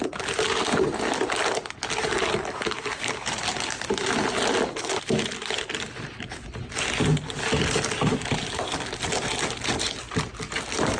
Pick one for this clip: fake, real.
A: real